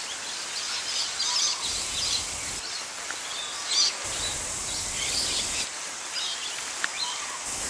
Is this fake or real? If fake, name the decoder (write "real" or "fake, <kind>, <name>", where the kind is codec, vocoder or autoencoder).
real